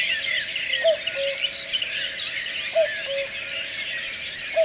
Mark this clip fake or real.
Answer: real